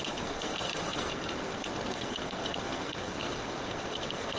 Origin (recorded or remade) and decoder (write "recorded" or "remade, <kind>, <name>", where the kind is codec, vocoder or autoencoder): remade, codec, SNAC